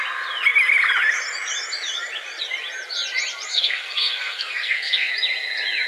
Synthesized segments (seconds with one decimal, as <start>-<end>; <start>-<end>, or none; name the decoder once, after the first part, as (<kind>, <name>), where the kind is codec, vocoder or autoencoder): 3.5-5.1 (codec, SNAC)